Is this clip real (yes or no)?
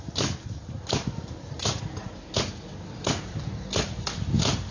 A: yes